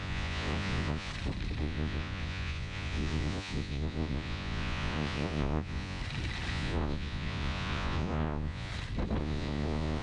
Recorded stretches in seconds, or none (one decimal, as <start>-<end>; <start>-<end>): 1.1-1.6; 6.0-6.5; 8.7-9.2